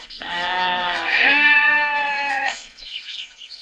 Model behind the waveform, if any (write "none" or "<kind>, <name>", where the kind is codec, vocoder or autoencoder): codec, SNAC